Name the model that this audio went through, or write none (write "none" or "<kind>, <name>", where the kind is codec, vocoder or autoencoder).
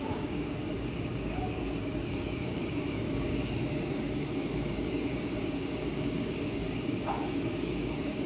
codec, DAC